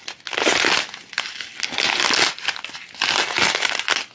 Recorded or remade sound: recorded